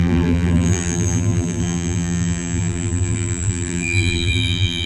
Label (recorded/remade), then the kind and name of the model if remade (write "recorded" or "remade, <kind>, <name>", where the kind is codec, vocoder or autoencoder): remade, vocoder, BigVGAN v2